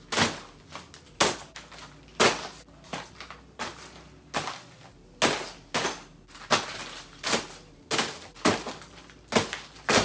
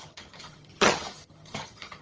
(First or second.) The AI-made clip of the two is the second